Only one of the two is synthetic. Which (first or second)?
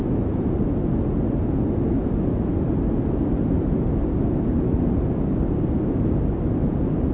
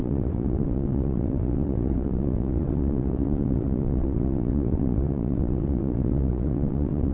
second